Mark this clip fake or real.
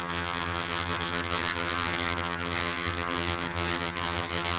fake